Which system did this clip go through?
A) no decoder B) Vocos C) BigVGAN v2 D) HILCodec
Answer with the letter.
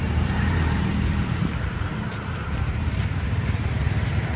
C